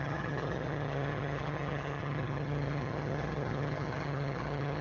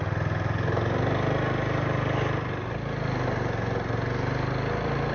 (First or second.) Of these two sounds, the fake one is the first